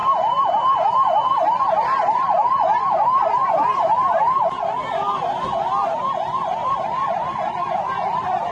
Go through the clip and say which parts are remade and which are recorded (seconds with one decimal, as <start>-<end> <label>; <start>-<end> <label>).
0.0-3.3 remade; 3.3-6.6 recorded; 6.6-7.8 remade; 7.8-8.5 recorded